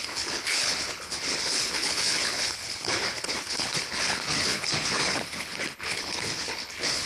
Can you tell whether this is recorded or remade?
remade